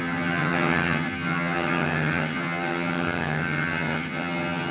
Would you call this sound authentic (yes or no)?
no